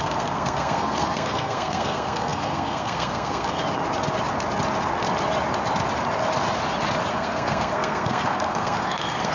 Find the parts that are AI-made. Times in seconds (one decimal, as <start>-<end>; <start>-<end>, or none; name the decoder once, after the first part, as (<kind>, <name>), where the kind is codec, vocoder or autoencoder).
0.0-3.6 (codec, SNAC); 7.1-9.3